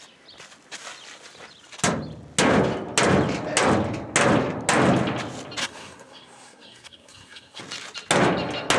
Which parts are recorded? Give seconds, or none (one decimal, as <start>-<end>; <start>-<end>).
0.0-5.6; 7.6-8.8